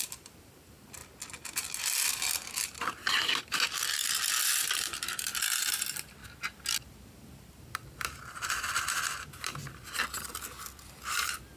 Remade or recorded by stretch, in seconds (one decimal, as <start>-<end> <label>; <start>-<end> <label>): 0.0-1.0 remade; 1.0-3.4 recorded; 3.4-4.0 remade; 4.0-4.6 recorded; 4.6-6.2 remade; 6.2-7.2 recorded; 7.2-11.6 remade